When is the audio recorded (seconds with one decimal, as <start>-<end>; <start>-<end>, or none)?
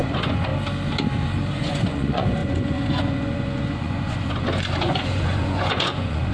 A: 0.5-1.5